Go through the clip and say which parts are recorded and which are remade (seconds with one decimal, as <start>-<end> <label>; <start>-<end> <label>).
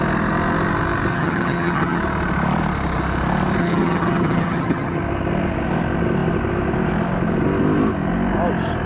0.0-1.1 recorded; 1.1-2.0 remade; 2.0-3.6 recorded; 3.6-5.0 remade; 5.0-8.9 recorded